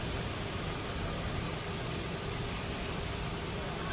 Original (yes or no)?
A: yes